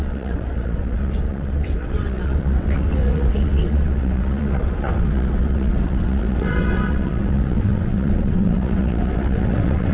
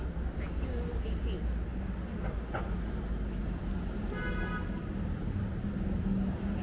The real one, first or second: second